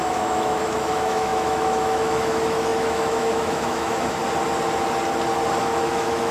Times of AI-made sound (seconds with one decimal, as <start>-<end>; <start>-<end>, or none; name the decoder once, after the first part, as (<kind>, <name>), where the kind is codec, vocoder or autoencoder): 0.0-4.2 (autoencoder, DAC-VAE); 5.6-6.3